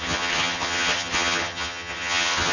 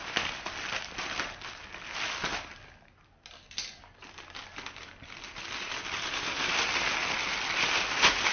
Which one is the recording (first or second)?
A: second